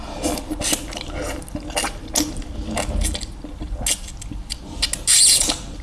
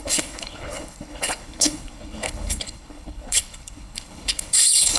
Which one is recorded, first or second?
first